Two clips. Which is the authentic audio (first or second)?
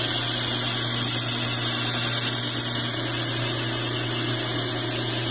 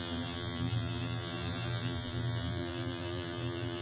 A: first